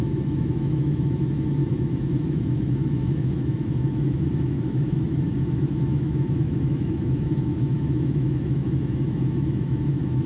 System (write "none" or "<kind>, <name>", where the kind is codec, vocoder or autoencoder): autoencoder, DAC-VAE